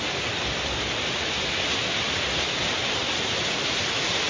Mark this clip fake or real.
real